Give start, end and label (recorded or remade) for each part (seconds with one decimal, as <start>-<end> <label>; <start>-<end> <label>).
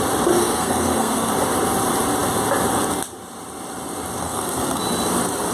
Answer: 0.0-0.4 recorded; 0.4-1.3 remade; 1.3-4.2 recorded; 4.2-4.8 remade; 4.8-5.5 recorded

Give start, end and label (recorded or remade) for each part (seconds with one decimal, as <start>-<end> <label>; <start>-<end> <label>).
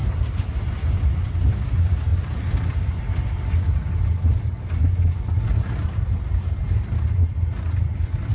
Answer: 0.0-0.6 remade; 0.6-8.3 recorded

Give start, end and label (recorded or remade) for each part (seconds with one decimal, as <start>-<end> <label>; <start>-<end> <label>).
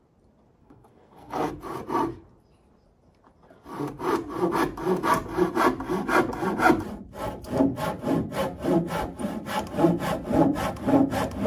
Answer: 0.0-0.6 recorded; 0.6-1.5 remade; 1.5-11.5 recorded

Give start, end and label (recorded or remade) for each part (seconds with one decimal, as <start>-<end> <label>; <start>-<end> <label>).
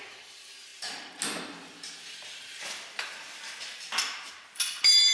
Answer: 0.0-5.1 recorded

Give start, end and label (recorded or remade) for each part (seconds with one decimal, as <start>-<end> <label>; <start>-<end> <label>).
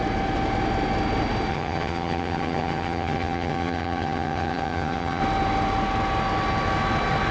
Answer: 0.0-1.5 recorded; 1.5-5.2 remade; 5.2-7.3 recorded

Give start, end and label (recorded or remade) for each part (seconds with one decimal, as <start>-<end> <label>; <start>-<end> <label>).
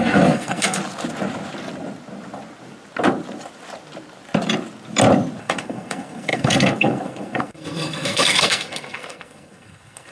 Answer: 0.0-0.8 remade; 0.8-5.4 recorded; 5.4-10.1 remade